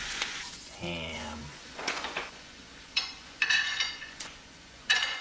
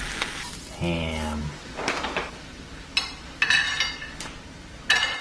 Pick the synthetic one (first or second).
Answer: first